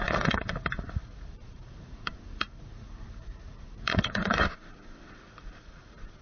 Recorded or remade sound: remade